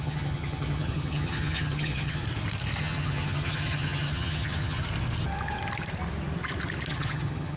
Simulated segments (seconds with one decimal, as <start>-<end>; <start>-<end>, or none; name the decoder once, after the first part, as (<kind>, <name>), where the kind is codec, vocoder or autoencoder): 0.0-2.2 (vocoder, HiFi-GAN); 2.8-4.8; 6.9-7.6